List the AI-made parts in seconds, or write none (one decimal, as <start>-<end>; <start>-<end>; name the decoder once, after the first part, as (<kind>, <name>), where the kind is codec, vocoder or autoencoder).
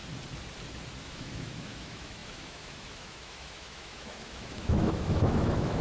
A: 1.0-5.8 (autoencoder, DAC-VAE)